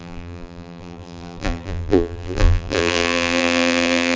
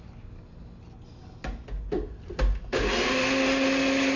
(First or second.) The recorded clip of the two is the second